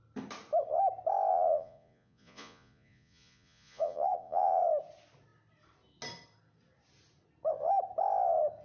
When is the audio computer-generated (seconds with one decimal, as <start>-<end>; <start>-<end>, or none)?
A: 1.3-4.6